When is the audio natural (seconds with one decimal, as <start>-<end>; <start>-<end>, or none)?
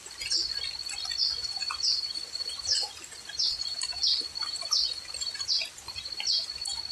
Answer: 0.0-1.4; 5.5-6.9